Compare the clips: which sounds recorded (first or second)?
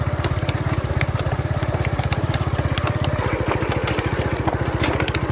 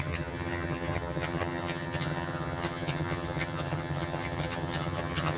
first